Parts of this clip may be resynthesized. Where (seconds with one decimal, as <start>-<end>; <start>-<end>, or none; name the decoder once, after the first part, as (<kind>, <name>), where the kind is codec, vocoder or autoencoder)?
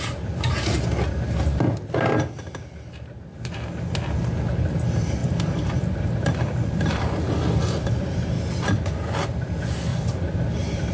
5.2-9.5 (vocoder, BigVGAN v2); 9.9-10.9